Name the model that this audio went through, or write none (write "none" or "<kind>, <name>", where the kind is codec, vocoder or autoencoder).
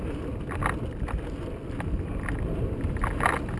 none